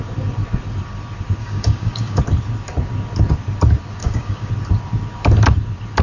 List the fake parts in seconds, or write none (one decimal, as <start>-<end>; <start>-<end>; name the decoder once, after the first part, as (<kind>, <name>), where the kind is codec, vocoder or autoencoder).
1.4-2.2 (codec, DAC); 4.0-4.5